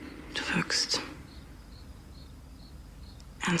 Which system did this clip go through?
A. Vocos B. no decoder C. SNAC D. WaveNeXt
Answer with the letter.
B